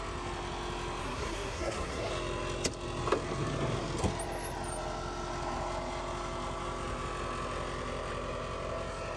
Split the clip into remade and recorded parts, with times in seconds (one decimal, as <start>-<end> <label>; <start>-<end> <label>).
0.0-1.0 recorded; 1.0-2.1 remade; 2.1-9.2 recorded